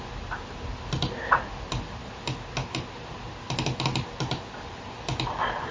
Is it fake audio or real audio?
real